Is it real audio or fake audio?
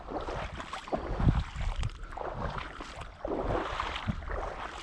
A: real